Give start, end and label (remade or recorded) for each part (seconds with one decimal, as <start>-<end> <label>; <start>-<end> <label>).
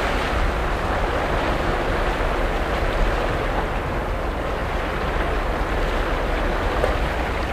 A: 0.0-7.5 recorded